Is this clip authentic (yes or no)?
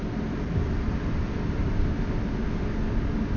yes